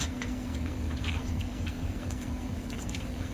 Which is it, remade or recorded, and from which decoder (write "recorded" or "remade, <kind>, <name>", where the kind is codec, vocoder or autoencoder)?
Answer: remade, codec, SNAC